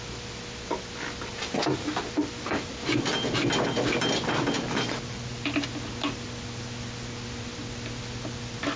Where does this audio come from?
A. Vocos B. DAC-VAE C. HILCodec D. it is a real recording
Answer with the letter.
D